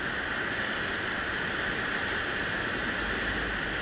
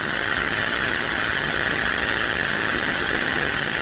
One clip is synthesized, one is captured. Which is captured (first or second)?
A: first